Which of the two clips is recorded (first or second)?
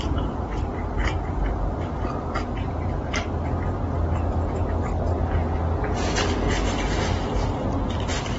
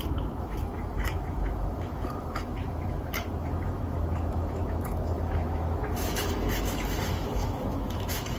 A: first